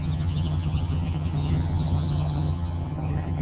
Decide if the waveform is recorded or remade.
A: remade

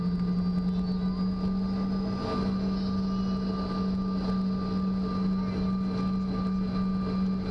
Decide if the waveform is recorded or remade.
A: recorded